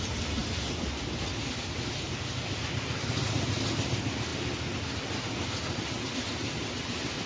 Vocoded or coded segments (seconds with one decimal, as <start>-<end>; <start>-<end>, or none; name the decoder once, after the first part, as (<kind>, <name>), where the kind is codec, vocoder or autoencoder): none